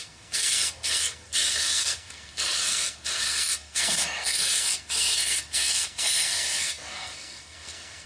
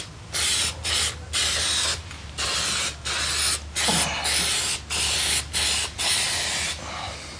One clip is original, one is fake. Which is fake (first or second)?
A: first